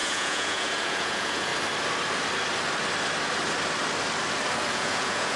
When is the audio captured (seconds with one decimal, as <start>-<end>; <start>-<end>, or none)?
1.5-4.7